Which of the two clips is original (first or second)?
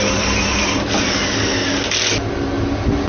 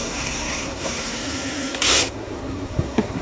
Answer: first